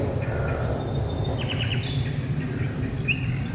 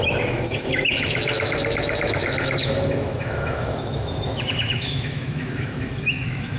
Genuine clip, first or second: first